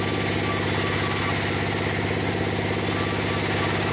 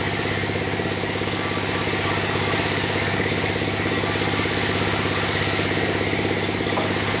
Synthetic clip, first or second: second